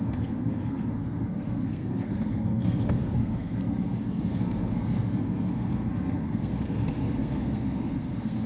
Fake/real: fake